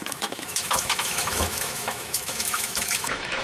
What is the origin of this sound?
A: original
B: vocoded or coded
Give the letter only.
B